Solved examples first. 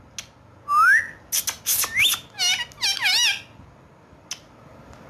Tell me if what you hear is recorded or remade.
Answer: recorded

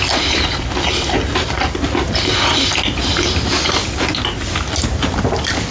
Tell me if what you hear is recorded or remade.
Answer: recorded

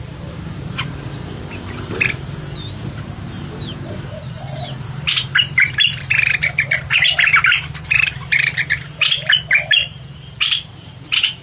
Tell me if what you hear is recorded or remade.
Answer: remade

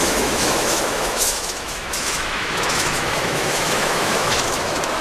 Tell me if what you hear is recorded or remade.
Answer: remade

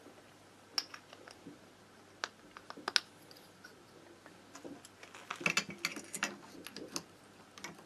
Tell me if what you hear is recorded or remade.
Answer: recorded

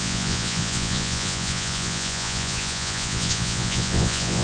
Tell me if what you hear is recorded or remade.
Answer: remade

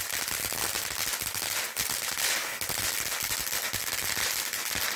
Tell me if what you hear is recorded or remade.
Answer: recorded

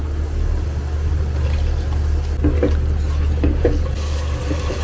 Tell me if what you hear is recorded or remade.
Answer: recorded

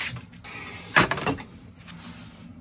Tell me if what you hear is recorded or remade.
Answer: recorded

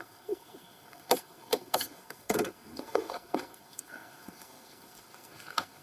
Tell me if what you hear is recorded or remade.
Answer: remade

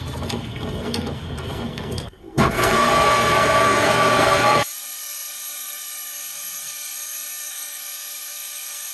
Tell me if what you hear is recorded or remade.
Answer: remade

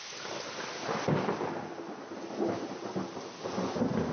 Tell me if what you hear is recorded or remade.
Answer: recorded